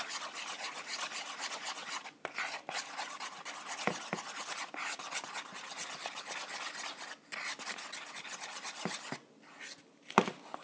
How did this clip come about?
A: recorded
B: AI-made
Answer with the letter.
A